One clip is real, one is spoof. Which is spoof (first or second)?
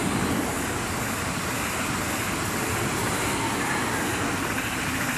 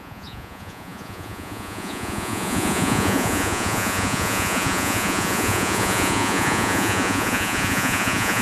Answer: second